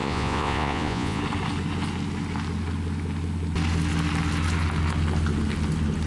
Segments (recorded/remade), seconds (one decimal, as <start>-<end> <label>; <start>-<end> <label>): 0.0-1.2 remade; 1.2-6.1 recorded